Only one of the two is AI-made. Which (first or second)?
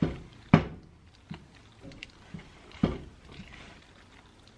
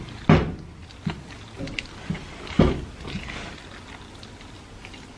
first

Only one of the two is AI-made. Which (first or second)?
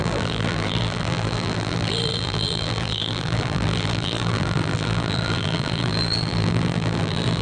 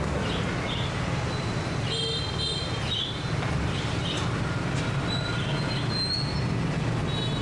first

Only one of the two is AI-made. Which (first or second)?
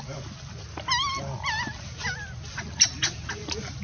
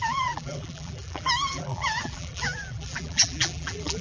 second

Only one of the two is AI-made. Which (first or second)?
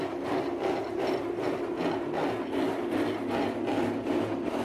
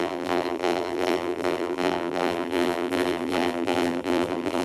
second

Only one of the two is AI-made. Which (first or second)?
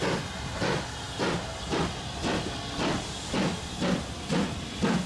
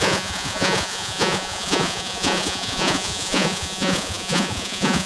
second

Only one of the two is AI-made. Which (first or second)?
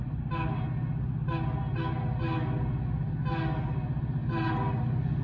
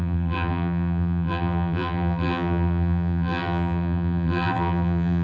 second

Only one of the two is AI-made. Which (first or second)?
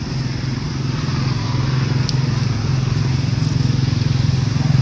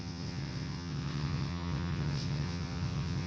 second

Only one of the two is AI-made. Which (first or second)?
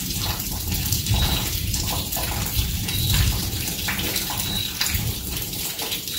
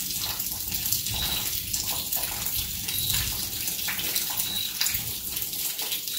first